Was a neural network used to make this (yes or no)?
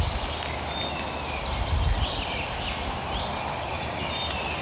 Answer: no